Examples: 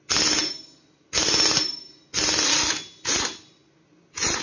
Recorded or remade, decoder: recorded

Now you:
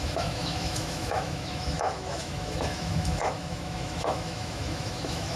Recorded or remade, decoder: remade, autoencoder, DAC-VAE